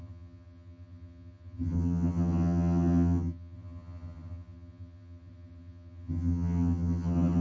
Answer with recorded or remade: remade